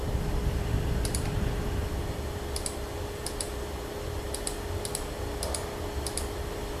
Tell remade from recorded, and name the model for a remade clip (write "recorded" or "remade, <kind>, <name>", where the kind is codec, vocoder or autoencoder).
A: recorded